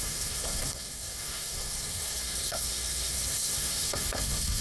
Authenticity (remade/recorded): remade